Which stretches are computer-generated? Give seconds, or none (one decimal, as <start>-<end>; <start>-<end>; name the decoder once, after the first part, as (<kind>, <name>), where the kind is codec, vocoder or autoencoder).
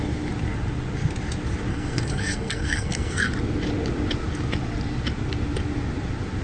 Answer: 1.7-3.3 (codec, SNAC)